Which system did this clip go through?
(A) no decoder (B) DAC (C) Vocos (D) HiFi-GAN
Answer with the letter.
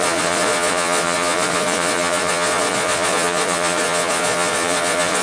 C